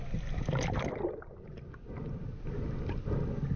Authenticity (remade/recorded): recorded